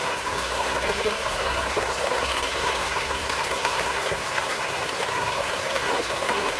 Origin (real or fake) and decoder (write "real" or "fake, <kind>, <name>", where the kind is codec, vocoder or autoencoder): fake, codec, SNAC